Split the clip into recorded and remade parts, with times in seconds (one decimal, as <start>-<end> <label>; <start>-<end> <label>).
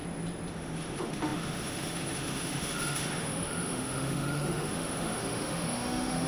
0.0-0.5 recorded; 0.5-6.3 remade